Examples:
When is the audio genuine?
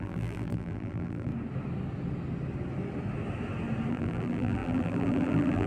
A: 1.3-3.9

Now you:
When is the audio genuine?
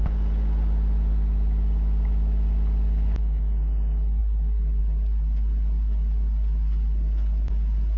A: 0.0-8.0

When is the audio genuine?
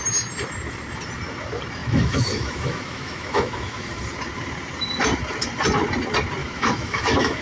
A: 0.0-1.8; 4.0-6.4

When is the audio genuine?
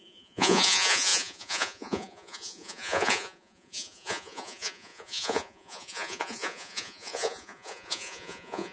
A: none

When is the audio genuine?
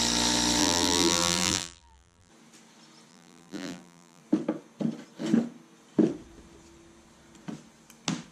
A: 0.0-0.6; 2.3-3.1; 4.2-8.3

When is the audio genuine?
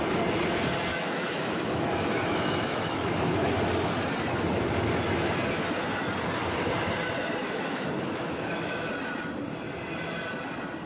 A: 0.0-0.9; 3.5-7.4; 8.9-10.9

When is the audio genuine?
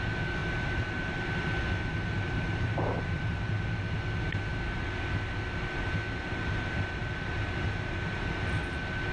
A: 0.0-0.4; 1.0-1.9; 3.8-9.1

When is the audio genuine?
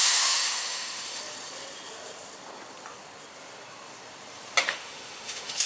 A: 1.2-4.6